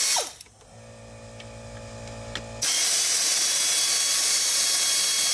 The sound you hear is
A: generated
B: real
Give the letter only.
B